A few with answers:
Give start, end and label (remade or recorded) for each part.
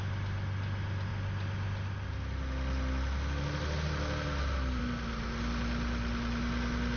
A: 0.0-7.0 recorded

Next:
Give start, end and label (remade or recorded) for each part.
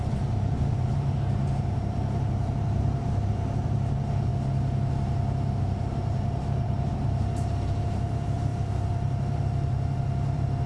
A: 0.0-4.3 remade; 4.3-5.6 recorded; 5.6-10.7 remade